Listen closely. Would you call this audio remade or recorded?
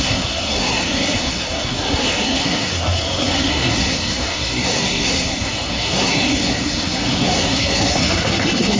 remade